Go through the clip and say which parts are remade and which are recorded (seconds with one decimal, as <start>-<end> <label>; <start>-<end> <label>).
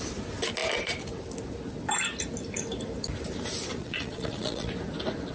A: 0.0-3.8 recorded; 3.8-4.7 remade; 4.7-5.3 recorded